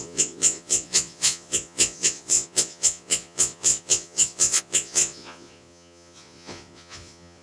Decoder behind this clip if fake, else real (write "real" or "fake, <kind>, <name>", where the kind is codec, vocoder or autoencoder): fake, vocoder, Vocos